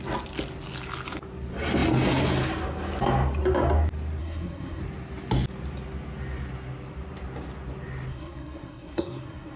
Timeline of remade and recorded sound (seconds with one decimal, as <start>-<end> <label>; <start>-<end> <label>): 0.0-4.2 recorded; 4.2-4.8 remade; 4.8-8.1 recorded; 8.1-9.6 remade